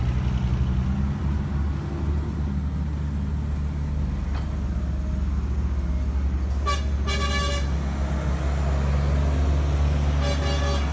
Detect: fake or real real